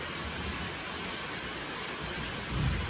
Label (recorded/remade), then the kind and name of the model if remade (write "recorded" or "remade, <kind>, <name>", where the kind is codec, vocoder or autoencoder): recorded